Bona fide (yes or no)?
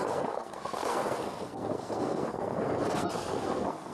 no